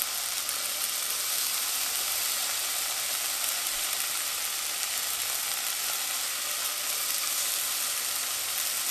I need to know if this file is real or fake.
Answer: real